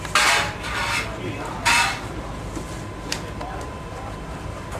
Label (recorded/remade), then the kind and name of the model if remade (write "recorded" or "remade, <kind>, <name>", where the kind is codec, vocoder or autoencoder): recorded